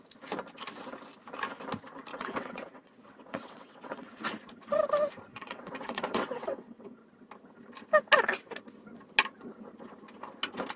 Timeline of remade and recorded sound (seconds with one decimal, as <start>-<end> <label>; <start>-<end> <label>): 0.0-2.1 recorded; 2.1-4.2 remade; 4.2-5.3 recorded; 5.3-7.0 remade; 7.0-10.8 recorded